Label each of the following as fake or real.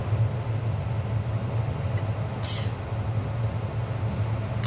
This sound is real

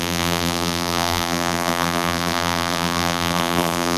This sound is fake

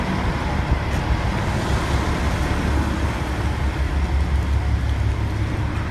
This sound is real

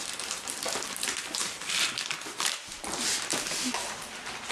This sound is real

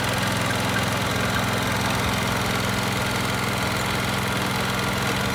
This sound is real